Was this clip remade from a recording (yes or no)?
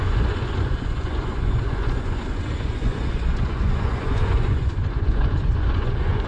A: yes